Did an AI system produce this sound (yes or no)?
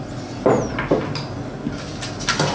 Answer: no